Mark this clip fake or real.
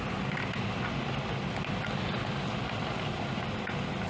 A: real